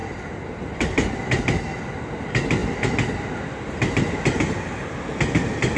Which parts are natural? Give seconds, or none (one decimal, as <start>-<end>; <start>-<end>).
0.0-5.8